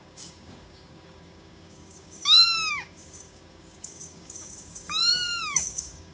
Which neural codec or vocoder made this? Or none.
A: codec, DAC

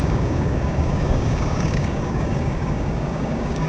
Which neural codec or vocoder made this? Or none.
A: codec, DAC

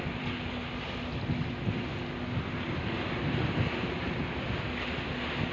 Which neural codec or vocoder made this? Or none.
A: none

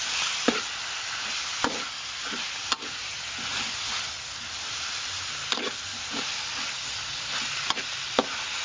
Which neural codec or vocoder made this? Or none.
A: none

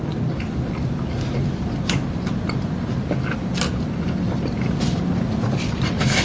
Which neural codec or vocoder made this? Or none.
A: none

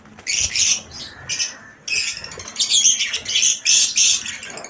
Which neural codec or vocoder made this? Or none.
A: none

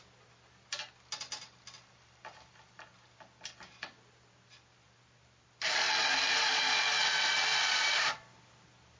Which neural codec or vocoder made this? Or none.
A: none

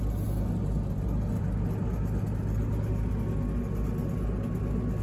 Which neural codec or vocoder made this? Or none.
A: none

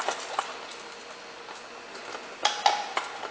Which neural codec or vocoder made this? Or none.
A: none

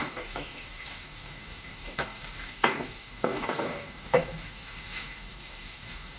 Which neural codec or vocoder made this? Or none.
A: codec, DAC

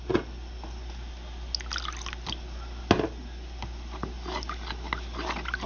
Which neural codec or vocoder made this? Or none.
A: none